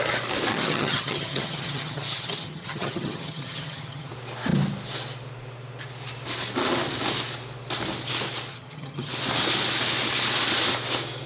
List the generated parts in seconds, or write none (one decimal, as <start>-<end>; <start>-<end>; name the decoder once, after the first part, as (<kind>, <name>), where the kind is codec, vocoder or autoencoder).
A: 0.5-4.1 (vocoder, HiFi-GAN); 8.5-9.1